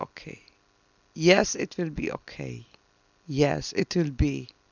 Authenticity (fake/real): real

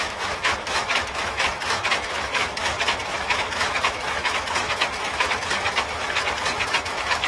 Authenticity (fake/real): fake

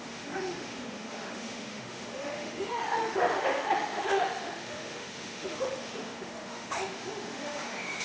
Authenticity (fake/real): fake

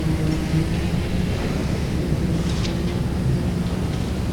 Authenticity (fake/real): real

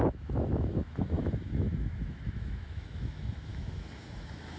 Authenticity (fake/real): fake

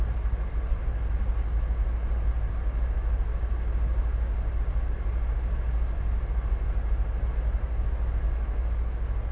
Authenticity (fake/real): real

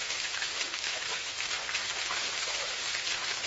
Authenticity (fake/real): fake